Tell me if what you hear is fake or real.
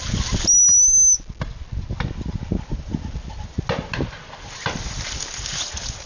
real